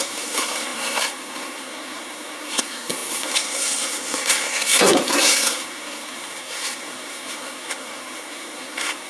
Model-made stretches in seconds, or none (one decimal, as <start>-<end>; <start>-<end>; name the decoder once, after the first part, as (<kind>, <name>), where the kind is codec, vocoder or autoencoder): 0.0-9.1 (codec, SNAC)